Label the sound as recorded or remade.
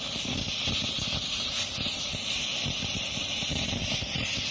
recorded